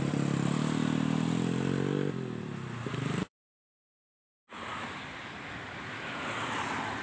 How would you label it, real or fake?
fake